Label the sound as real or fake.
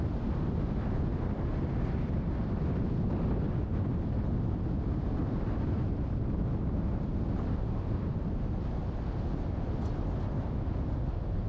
real